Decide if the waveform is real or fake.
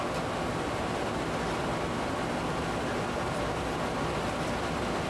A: real